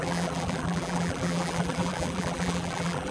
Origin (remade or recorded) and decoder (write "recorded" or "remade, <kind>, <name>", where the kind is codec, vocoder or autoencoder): remade, vocoder, BigVGAN v2